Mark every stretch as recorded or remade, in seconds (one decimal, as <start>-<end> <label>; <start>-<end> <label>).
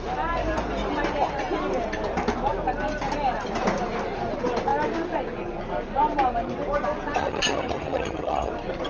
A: 0.0-7.2 recorded; 7.2-8.5 remade; 8.5-8.9 recorded